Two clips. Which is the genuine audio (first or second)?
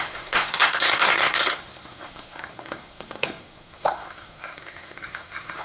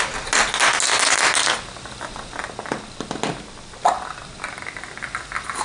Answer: second